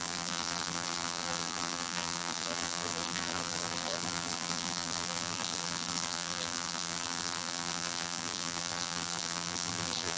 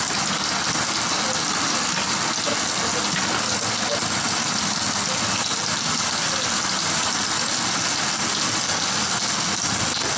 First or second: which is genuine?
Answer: second